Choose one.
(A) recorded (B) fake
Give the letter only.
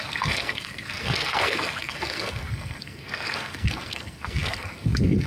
B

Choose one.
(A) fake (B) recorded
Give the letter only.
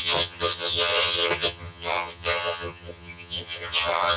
A